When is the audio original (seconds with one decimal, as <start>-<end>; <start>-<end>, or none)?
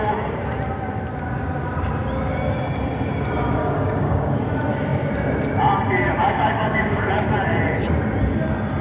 0.0-3.6; 4.4-6.2; 7.0-8.8